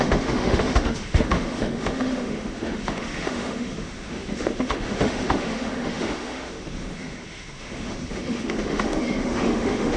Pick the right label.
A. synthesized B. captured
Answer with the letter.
A